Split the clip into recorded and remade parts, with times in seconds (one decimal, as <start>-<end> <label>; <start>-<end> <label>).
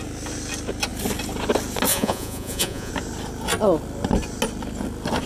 0.0-1.9 recorded; 1.9-2.9 remade; 2.9-5.3 recorded